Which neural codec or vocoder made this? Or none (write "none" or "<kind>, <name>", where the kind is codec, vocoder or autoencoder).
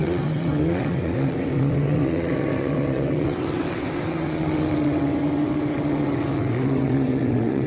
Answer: vocoder, WaveNeXt